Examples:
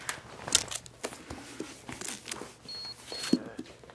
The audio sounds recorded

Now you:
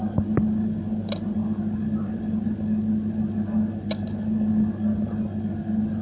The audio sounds recorded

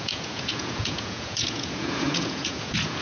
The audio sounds remade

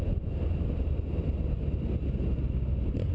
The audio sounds recorded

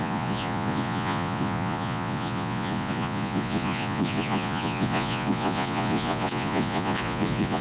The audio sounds remade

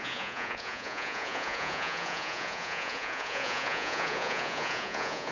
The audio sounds remade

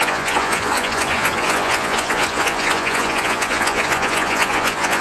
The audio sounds remade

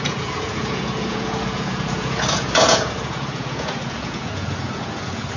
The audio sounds remade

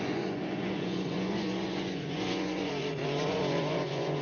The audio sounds remade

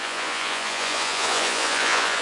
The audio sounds remade